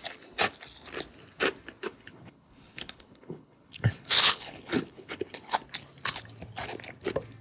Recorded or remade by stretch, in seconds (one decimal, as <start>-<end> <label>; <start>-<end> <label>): 0.0-1.8 recorded; 1.8-5.6 remade; 5.6-7.4 recorded